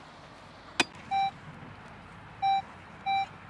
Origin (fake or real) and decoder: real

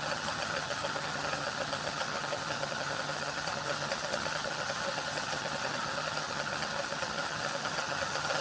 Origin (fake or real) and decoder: fake, vocoder, HiFi-GAN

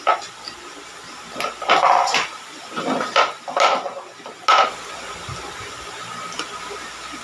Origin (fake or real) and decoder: real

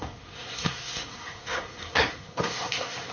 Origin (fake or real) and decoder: fake, codec, SNAC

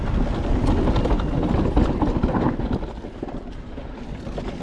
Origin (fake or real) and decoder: real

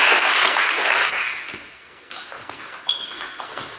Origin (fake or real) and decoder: fake, codec, SNAC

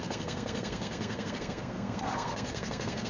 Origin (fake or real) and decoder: fake, codec, SNAC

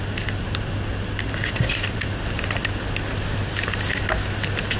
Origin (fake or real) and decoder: real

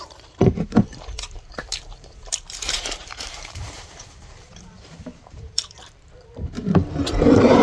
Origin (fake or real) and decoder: fake, vocoder, BigVGAN v2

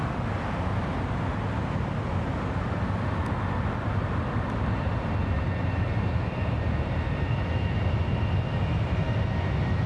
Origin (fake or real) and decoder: real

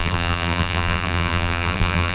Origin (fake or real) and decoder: fake, vocoder, BigVGAN v2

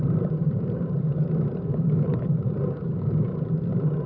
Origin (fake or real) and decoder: fake, vocoder, BigVGAN v2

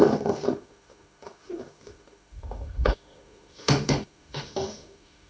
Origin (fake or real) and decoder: fake, autoencoder, DAC-VAE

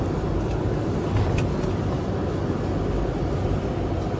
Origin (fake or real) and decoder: real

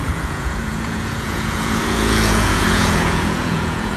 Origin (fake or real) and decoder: fake, vocoder, Vocos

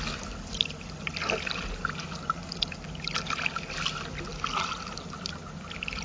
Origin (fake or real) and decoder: real